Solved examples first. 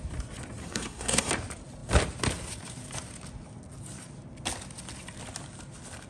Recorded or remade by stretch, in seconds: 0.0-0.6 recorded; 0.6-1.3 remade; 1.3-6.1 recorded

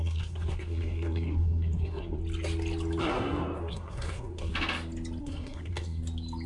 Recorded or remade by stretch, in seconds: 0.0-2.2 remade; 2.2-3.0 recorded; 3.0-4.5 remade; 4.5-5.2 recorded; 5.2-6.0 remade; 6.0-6.5 recorded